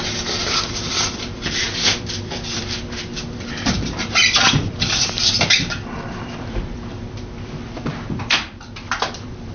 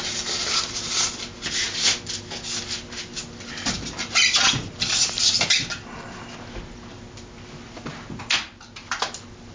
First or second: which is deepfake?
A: first